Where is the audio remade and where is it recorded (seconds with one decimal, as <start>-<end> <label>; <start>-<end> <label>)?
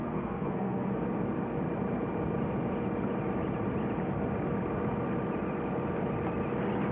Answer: 0.0-0.9 remade; 0.9-6.9 recorded